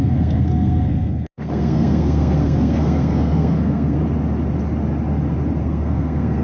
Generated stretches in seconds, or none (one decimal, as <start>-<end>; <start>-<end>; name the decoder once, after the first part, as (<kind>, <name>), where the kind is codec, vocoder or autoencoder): 0.0-4.0 (codec, SNAC); 5.6-6.4